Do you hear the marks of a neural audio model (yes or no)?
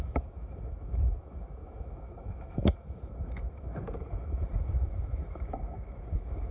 yes